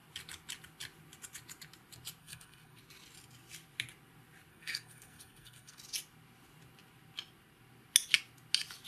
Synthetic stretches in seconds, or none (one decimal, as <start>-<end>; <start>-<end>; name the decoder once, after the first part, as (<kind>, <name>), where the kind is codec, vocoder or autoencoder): 2.2-2.8 (codec, SNAC); 4.5-5.8